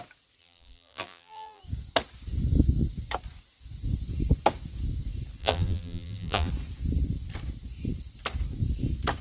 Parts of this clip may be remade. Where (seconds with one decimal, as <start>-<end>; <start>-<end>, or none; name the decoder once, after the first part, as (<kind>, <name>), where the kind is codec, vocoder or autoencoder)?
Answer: 0.4-1.6 (vocoder, BigVGAN v2); 5.4-6.5